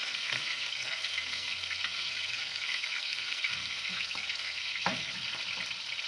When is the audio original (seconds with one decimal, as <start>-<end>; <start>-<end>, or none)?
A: 5.1-6.1